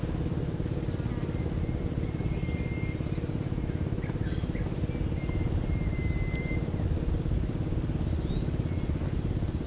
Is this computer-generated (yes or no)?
no